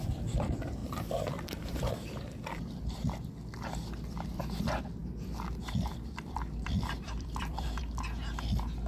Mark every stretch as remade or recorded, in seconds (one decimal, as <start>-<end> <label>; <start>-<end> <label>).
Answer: 0.0-8.9 remade